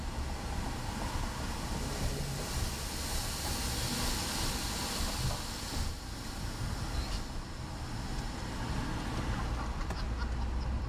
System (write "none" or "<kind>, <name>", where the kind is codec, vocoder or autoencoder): none